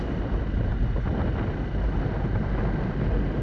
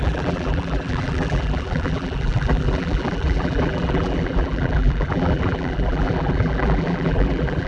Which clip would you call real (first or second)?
first